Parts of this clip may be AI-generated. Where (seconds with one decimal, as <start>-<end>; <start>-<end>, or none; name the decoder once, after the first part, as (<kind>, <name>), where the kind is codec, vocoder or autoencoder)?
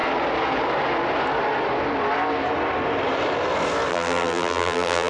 3.9-5.1 (vocoder, BigVGAN v2)